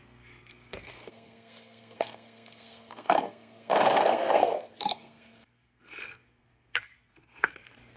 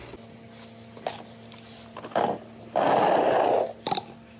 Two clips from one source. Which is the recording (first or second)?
second